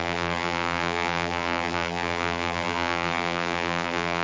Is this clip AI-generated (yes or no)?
yes